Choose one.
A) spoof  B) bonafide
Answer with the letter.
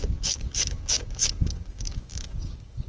A